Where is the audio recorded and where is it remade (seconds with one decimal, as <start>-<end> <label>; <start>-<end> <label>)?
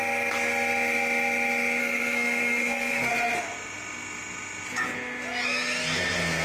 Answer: 0.0-1.8 recorded; 1.8-3.1 remade; 3.1-6.4 recorded